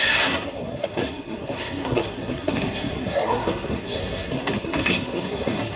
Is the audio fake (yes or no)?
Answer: yes